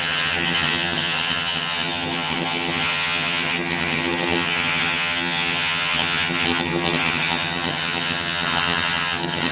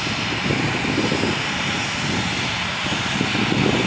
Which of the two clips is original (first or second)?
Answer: second